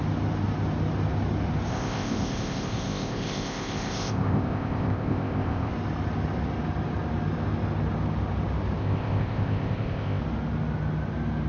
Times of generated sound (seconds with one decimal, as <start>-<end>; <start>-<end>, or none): 1.7-5.7; 8.8-10.2